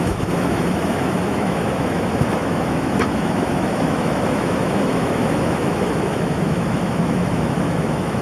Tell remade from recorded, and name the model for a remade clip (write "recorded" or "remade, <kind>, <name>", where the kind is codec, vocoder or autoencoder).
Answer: remade, autoencoder, DAC-VAE